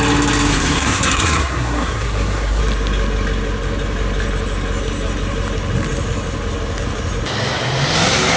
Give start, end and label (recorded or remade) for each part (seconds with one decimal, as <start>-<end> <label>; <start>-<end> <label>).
0.0-0.5 recorded; 0.5-2.6 remade; 2.6-8.4 recorded